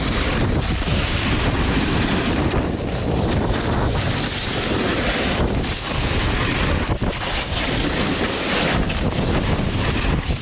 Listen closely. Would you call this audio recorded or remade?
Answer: recorded